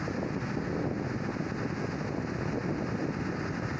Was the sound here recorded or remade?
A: recorded